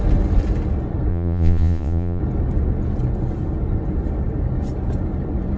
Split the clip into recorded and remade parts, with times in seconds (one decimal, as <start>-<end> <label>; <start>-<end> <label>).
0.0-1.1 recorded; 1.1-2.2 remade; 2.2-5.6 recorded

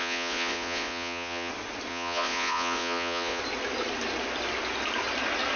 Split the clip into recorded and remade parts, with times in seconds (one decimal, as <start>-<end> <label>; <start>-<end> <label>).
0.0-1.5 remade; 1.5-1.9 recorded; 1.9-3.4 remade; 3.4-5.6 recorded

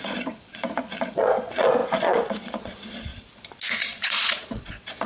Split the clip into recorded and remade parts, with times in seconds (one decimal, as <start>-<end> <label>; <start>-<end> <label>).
0.0-3.1 remade; 3.1-3.7 recorded; 3.7-5.1 remade